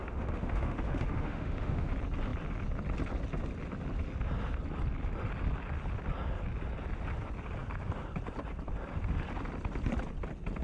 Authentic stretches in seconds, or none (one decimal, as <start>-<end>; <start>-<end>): 1.9-10.6